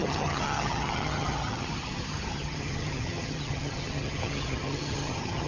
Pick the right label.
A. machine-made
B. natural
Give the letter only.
A